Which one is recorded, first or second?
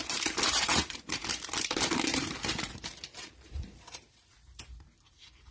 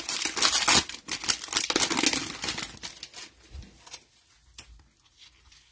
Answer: second